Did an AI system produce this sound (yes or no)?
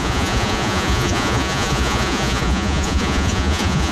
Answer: yes